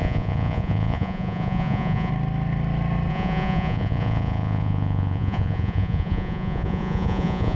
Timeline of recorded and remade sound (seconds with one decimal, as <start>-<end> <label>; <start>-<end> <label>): 0.0-2.1 remade; 2.1-3.1 recorded; 3.1-7.6 remade